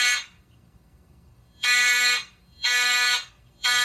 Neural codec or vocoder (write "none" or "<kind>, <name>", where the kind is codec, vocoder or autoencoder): codec, SNAC